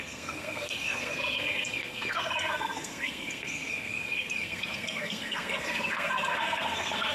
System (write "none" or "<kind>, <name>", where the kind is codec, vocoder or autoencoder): codec, SNAC